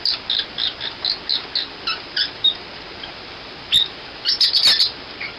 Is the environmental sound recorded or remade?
recorded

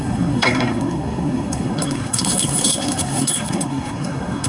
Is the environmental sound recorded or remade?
remade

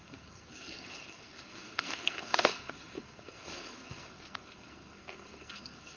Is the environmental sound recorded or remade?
remade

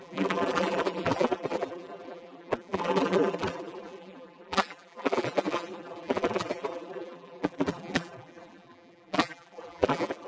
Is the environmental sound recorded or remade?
remade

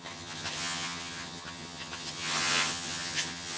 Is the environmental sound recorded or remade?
remade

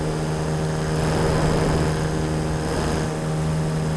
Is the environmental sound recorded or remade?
recorded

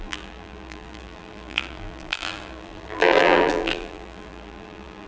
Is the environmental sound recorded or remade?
remade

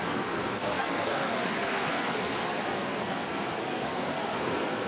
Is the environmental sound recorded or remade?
remade